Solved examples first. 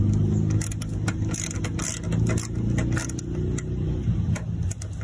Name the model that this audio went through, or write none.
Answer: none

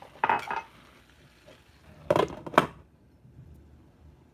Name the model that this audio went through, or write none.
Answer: none